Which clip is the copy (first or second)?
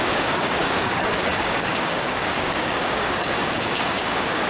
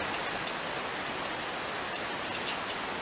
first